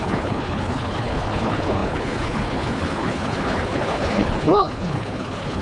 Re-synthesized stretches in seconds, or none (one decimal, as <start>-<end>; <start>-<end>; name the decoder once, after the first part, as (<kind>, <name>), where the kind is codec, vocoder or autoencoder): 0.0-5.6 (codec, HILCodec)